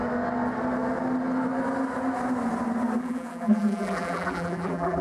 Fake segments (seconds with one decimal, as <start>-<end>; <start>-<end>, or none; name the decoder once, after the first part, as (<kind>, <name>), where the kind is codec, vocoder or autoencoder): 3.0-5.0 (vocoder, BigVGAN v2)